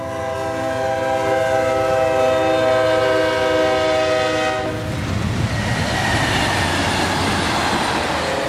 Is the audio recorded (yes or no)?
yes